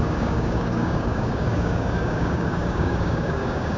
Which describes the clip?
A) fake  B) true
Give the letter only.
A